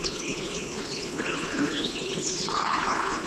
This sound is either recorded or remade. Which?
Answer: remade